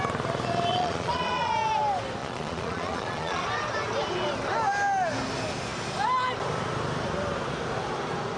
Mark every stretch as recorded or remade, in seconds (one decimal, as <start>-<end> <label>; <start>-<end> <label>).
0.0-0.7 recorded; 0.7-1.5 remade; 1.5-2.2 recorded; 2.2-3.4 remade; 3.4-8.4 recorded